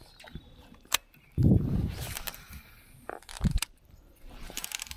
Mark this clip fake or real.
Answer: fake